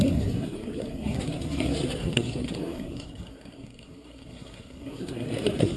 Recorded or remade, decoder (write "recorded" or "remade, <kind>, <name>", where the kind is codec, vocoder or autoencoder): remade, codec, SNAC